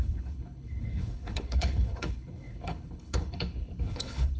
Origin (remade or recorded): remade